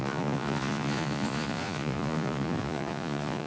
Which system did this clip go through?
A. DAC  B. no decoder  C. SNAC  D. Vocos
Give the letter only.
D